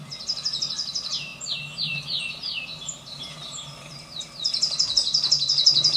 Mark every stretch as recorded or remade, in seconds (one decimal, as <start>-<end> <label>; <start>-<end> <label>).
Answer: 0.0-6.0 recorded